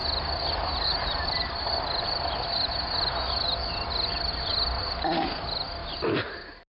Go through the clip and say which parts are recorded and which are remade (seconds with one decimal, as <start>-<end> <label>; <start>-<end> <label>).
0.0-5.8 recorded; 5.8-6.3 remade; 6.3-6.7 recorded